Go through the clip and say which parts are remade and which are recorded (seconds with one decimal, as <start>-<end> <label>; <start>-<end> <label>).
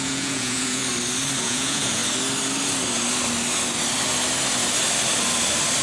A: 0.0-0.8 remade; 0.8-1.4 recorded; 1.4-2.0 remade; 2.0-5.8 recorded